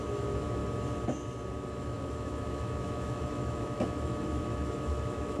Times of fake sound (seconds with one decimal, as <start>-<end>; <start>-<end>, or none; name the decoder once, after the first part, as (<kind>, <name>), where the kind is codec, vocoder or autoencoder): 0.0-0.6 (autoencoder, DAC-VAE); 1.7-5.4